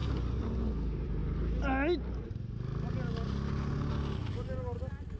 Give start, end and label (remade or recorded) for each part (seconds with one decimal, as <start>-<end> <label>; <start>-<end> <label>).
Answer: 0.0-5.2 recorded